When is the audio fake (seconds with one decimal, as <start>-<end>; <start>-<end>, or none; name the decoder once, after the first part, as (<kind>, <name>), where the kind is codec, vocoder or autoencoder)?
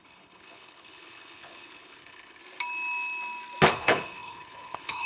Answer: 0.0-2.4 (codec, HILCodec); 3.7-5.1